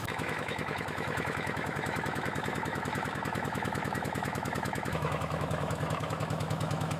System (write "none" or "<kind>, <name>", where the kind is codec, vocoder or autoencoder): autoencoder, DAC-VAE